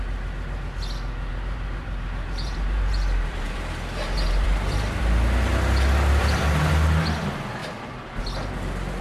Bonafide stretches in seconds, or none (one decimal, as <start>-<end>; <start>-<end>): 0.0-1.3; 5.0-6.2; 6.7-9.0